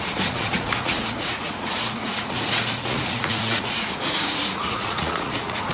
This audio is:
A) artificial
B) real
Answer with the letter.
A